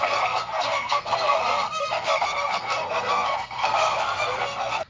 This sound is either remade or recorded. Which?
remade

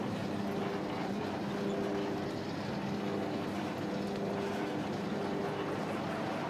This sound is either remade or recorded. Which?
recorded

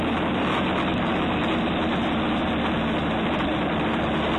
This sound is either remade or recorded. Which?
recorded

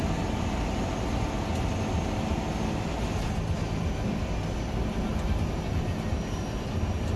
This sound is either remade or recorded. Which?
recorded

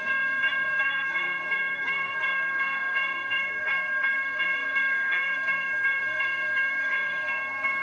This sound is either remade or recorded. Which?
remade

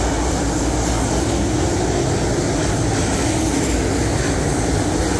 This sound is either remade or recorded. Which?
recorded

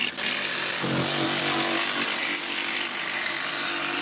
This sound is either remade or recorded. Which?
recorded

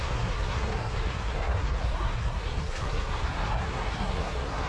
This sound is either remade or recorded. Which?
remade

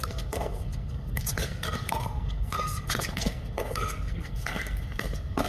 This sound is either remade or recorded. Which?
remade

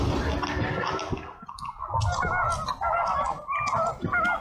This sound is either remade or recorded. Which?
recorded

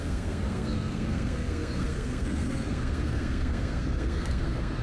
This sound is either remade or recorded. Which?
remade